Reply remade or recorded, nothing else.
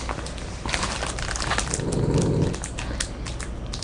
recorded